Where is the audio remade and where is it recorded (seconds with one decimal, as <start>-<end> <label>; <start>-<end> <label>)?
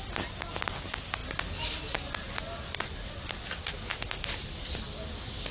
0.0-5.5 recorded